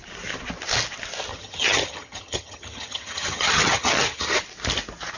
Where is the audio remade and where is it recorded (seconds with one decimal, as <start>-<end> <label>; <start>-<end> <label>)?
0.0-1.3 recorded; 1.3-4.4 remade; 4.4-5.2 recorded